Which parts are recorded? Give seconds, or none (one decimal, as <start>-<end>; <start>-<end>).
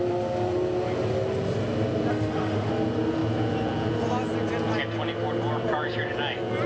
0.0-2.1; 2.7-6.7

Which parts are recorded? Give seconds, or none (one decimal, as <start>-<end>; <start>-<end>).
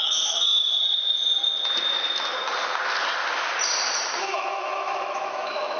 0.7-4.2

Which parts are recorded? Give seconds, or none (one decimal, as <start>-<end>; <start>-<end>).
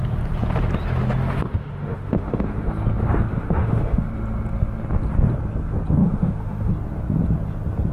0.0-1.4; 2.7-3.3; 4.0-6.0; 6.7-7.9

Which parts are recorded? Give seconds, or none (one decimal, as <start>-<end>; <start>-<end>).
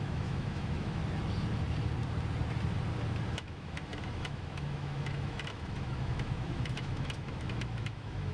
1.0-3.3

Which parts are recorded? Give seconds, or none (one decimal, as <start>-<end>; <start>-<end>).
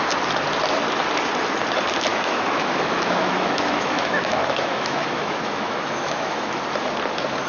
0.0-2.1; 6.6-7.5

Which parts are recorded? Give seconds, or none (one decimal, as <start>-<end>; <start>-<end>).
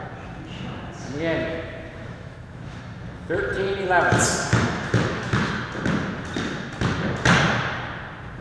0.0-1.4; 2.8-4.5; 5.5-8.4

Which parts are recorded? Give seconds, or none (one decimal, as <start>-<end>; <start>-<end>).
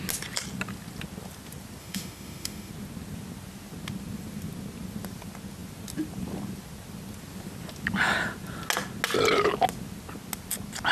0.0-1.8; 2.7-10.9